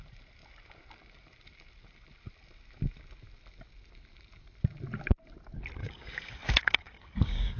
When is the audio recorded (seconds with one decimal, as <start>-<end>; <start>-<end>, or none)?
0.0-5.8